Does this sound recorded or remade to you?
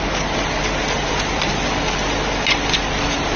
recorded